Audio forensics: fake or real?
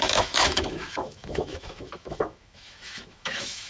fake